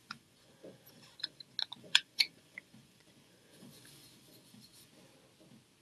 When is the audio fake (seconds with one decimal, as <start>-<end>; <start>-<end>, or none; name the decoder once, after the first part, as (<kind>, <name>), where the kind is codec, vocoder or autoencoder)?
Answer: 0.0-1.4 (vocoder, Vocos); 1.8-4.9